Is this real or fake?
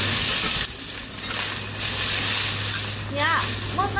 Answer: real